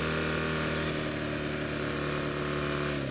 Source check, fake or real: real